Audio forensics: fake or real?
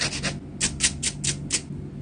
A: real